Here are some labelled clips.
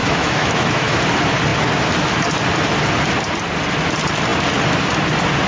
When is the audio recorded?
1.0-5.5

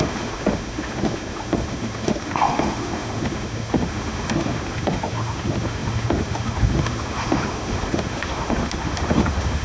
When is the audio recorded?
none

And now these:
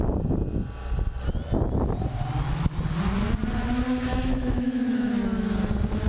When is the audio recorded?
0.0-4.1; 5.1-6.1